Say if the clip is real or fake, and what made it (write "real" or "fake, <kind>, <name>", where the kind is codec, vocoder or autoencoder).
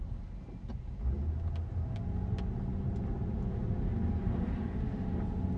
real